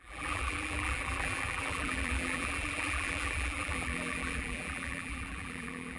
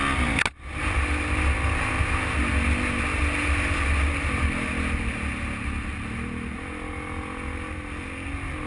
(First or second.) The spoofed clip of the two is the first